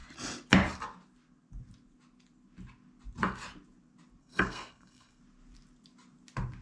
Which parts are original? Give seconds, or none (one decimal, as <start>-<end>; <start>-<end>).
0.0-4.2; 5.2-6.6